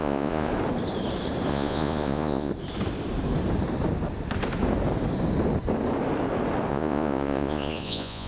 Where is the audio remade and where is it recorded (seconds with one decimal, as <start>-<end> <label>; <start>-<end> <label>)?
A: 0.0-0.5 remade; 0.5-1.5 recorded; 1.5-2.5 remade; 2.5-6.7 recorded; 6.7-8.3 remade

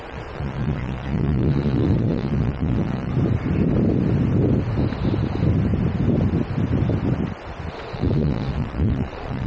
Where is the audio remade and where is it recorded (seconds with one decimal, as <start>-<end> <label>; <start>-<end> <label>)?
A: 0.0-3.1 remade; 3.1-7.7 recorded; 7.7-9.5 remade